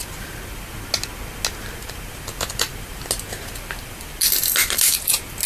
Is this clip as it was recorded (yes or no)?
yes